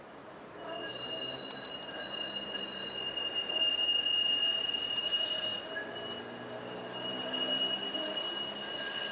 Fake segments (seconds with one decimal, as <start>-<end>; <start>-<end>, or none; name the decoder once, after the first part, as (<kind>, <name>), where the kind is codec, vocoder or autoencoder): none